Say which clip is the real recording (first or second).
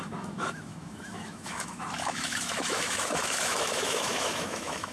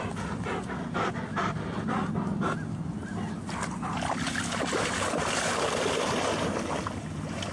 second